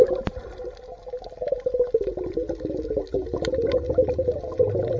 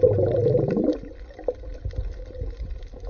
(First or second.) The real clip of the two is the first